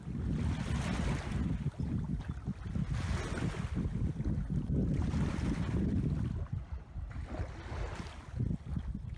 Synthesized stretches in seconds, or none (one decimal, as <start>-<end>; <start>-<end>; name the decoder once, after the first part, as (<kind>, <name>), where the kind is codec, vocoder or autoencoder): none